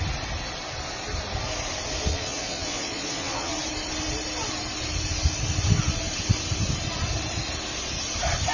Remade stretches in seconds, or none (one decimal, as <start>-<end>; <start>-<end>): 2.1-3.5